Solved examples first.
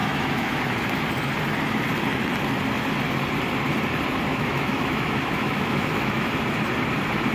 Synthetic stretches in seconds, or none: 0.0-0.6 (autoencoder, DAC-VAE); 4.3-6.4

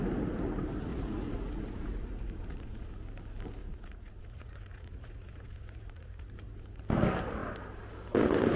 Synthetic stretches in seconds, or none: 0.9-2.9 (vocoder, Vocos); 3.6-6.8

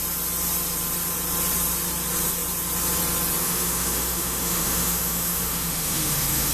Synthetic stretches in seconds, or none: 3.4-6.5 (autoencoder, DAC-VAE)

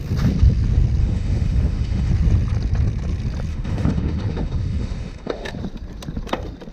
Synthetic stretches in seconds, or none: 1.0-2.1 (autoencoder, DAC-VAE); 3.5-5.5